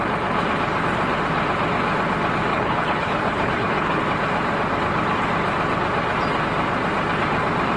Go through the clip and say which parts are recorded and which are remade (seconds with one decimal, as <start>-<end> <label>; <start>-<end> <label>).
0.0-2.5 recorded; 2.5-4.0 remade; 4.0-7.8 recorded